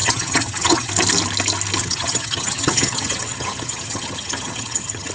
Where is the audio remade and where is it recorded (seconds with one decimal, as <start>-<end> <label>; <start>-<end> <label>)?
0.0-0.9 remade; 0.9-1.8 recorded; 1.8-5.1 remade